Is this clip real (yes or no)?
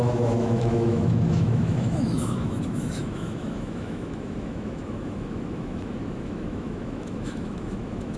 no